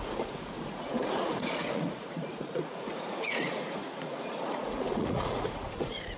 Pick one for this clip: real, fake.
fake